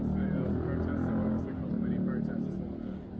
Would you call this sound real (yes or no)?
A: yes